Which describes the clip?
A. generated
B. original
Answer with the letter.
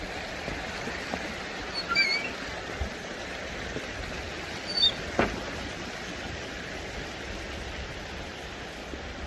B